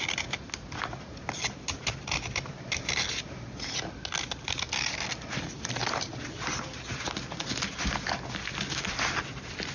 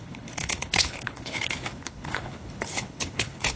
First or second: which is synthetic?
second